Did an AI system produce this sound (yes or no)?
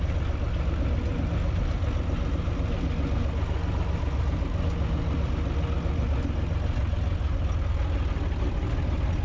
no